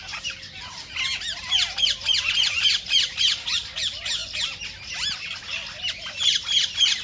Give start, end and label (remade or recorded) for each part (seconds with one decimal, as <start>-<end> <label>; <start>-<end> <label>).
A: 0.0-7.0 recorded